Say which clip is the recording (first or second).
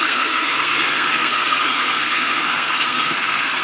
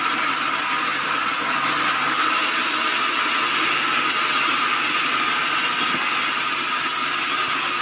second